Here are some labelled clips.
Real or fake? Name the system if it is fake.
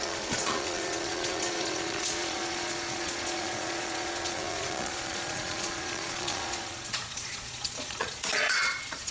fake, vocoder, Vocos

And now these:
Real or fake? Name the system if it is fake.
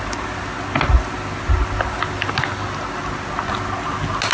real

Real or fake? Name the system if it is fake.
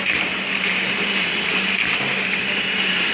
real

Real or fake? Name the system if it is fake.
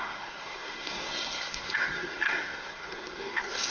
fake, codec, SNAC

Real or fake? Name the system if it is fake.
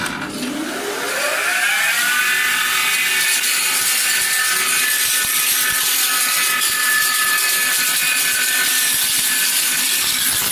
real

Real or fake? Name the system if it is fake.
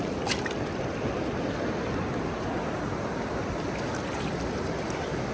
real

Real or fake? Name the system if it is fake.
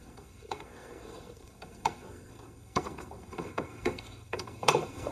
fake, codec, SNAC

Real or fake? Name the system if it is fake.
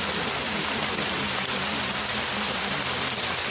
real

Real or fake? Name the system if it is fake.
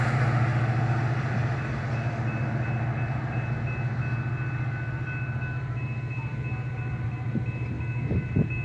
real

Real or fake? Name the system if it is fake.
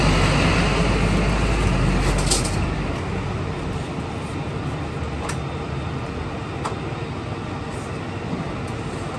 real